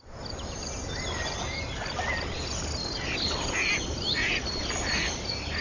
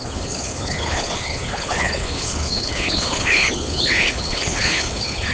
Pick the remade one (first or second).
second